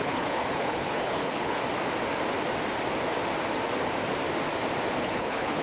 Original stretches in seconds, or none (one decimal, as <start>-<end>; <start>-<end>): 1.6-5.0